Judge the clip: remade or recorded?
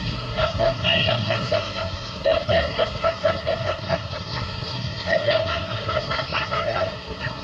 remade